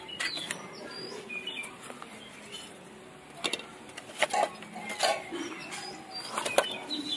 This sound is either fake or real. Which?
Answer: real